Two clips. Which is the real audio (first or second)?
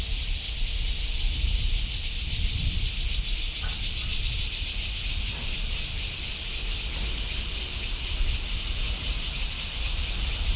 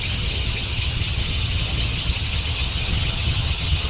first